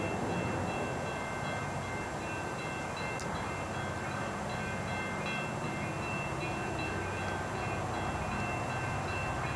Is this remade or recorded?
recorded